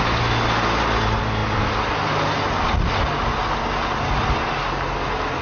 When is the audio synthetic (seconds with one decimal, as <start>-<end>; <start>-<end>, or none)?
none